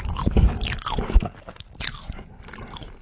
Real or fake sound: real